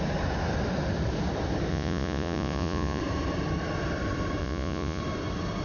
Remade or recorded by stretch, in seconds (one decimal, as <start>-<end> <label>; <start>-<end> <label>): 0.0-1.7 recorded; 1.7-3.0 remade; 3.0-4.4 recorded; 4.4-5.0 remade; 5.0-5.6 recorded